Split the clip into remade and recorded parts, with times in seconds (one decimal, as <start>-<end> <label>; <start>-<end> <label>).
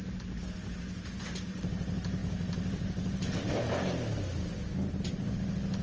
0.0-5.8 recorded